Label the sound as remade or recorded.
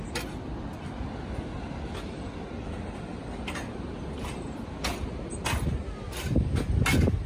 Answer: recorded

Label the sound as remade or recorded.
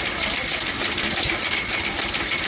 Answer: recorded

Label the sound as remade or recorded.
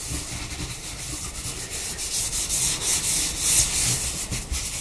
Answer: recorded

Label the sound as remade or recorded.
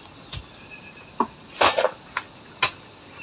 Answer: recorded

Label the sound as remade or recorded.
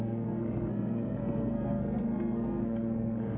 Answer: remade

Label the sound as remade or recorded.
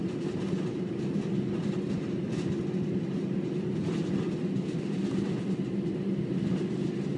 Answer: recorded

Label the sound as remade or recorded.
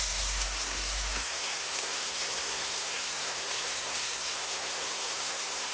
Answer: remade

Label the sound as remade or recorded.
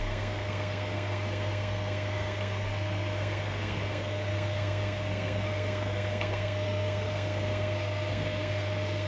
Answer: remade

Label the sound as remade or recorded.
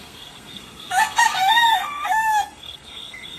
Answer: remade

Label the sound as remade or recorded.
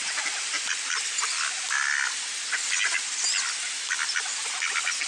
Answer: recorded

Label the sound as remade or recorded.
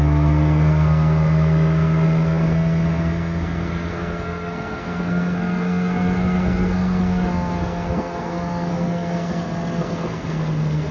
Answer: remade